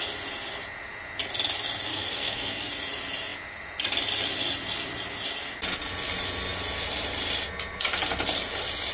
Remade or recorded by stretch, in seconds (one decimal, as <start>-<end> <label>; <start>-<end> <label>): 0.0-1.9 recorded; 1.9-2.7 remade; 2.7-8.9 recorded